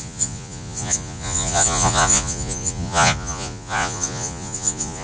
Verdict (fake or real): fake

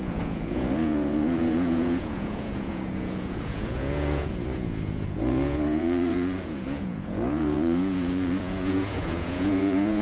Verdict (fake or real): fake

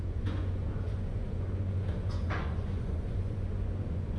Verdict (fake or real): fake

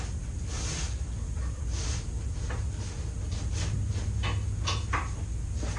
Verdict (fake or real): real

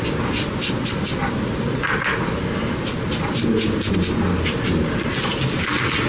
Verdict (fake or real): real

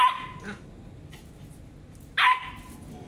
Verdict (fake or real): real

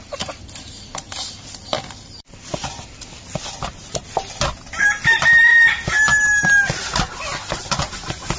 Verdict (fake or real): real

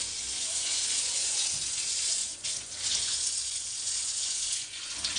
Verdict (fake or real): fake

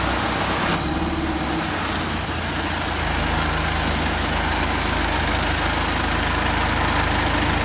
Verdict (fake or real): real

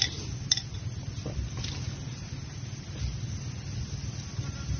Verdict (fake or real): real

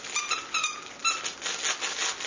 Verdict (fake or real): real